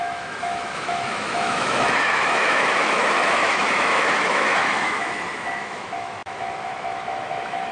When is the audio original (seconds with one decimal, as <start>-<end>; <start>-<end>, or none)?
none